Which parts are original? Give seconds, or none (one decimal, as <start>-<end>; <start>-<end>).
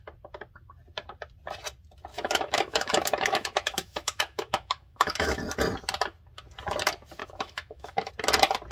0.0-2.1; 5.4-7.2; 8.1-8.7